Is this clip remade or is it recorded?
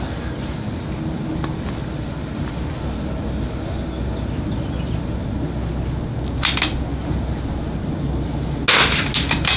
recorded